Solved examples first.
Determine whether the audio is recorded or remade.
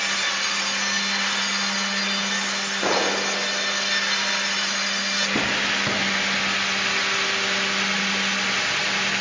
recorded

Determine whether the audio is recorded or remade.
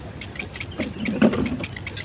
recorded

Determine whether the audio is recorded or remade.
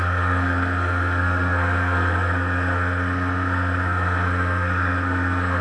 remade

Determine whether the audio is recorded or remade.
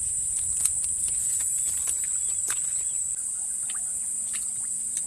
recorded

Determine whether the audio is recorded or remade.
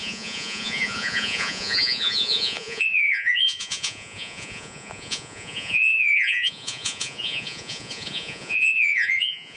remade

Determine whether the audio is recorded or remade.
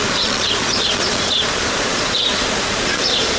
remade